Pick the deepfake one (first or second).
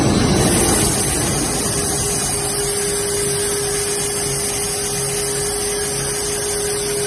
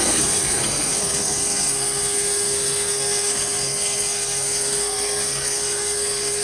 second